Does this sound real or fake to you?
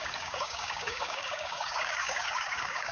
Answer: fake